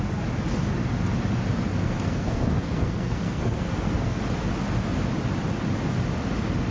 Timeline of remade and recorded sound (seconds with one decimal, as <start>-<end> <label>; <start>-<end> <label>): 0.0-1.7 recorded; 1.7-4.2 remade; 4.2-6.7 recorded